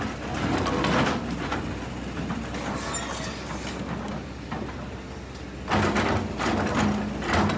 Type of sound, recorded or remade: recorded